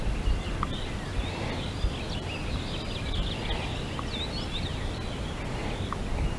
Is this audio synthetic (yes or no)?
no